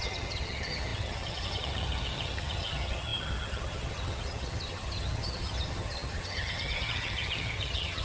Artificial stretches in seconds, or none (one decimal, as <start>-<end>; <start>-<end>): 0.0-8.0